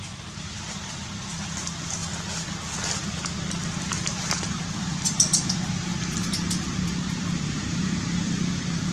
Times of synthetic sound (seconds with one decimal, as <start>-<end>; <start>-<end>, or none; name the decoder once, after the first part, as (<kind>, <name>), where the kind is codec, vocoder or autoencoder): 0.0-2.0 (vocoder, BigVGAN v2); 4.1-8.9